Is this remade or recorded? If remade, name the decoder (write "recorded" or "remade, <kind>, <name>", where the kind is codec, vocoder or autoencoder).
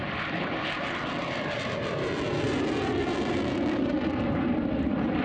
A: remade, vocoder, BigVGAN v2